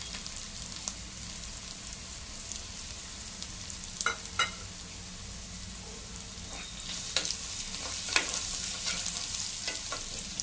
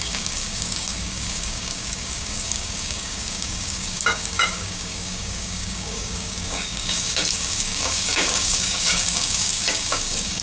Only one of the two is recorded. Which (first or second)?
first